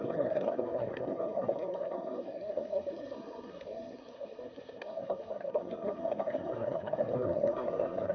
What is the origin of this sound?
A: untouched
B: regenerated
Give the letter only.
B